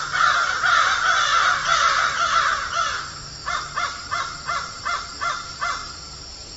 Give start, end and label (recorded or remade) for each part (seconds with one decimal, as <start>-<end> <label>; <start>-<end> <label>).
0.0-6.6 recorded